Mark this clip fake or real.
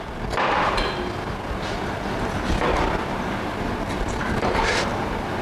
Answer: real